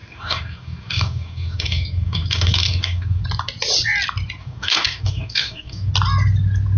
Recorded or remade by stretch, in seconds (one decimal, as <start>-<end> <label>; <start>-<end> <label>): 0.0-3.2 remade; 3.2-4.4 recorded; 4.4-5.9 remade; 5.9-6.8 recorded